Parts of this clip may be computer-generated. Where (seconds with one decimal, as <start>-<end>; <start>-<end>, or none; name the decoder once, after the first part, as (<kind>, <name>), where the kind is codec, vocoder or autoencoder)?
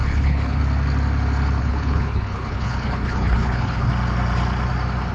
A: 0.0-0.6 (codec, HILCodec); 1.6-3.9